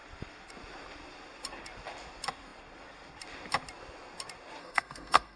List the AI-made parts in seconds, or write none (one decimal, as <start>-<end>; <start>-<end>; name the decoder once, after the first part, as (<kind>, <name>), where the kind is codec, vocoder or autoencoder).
4.6-5.4 (codec, SNAC)